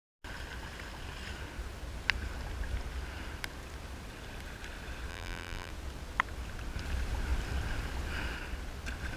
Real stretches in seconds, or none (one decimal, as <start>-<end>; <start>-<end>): 0.0-5.1; 5.7-9.2